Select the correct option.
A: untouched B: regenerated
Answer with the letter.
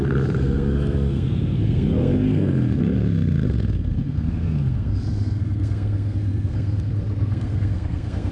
B